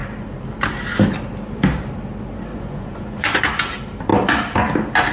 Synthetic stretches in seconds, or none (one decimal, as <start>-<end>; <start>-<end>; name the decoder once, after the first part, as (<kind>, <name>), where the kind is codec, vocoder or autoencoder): 2.5-3.4 (vocoder, Vocos)